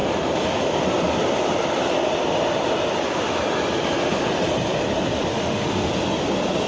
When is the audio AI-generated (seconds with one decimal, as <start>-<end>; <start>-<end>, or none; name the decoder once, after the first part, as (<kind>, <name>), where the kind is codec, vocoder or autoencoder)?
5.3-5.9 (autoencoder, DAC-VAE)